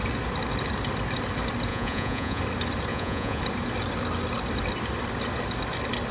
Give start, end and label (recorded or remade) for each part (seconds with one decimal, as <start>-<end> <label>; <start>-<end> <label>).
0.0-1.7 recorded; 1.7-2.4 remade; 2.4-2.9 recorded; 2.9-3.4 remade; 3.4-6.1 recorded